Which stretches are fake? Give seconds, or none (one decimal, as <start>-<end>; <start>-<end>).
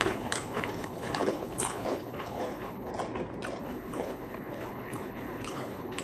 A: 0.0-2.9; 3.6-6.0